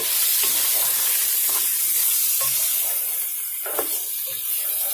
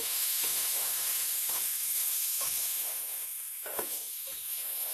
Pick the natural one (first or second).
first